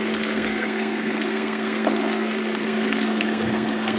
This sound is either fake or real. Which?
fake